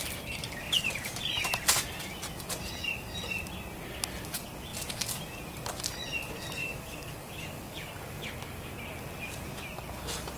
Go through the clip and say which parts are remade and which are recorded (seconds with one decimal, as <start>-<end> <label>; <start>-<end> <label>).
0.0-6.6 recorded; 6.6-8.7 remade; 8.7-10.4 recorded